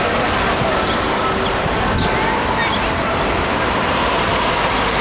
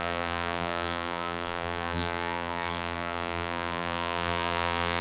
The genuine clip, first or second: first